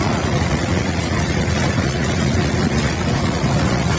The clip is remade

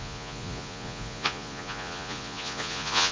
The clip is remade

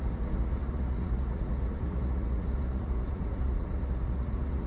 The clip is remade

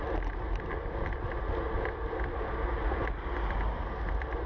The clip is recorded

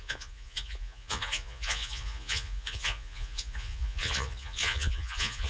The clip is remade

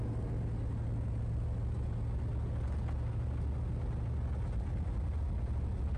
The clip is recorded